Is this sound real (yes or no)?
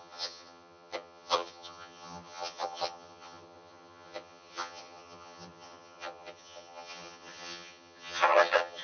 no